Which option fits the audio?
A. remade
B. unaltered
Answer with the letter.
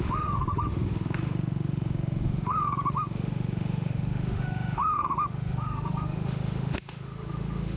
A